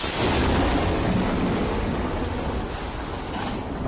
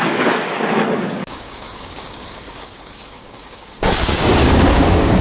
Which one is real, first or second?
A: first